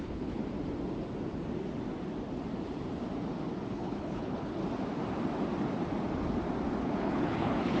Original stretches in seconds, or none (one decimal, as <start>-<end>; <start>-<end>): 0.4-3.7; 4.6-6.8